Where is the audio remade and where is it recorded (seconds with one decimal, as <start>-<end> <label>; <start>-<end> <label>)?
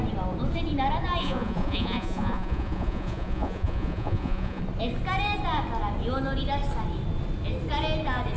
0.0-1.2 recorded; 1.2-4.6 remade; 4.6-8.4 recorded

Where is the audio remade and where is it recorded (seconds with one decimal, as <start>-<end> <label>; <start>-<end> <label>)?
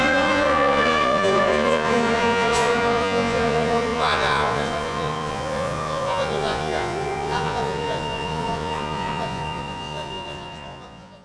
0.0-11.2 remade